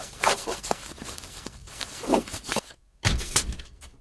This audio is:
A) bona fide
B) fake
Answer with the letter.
B